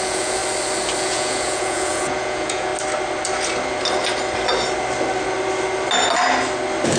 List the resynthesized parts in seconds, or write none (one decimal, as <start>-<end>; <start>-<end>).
0.0-0.4; 1.0-2.7